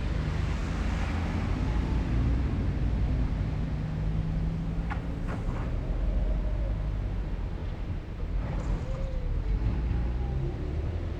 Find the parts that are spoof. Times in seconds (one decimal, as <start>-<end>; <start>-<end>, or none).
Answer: 7.6-11.2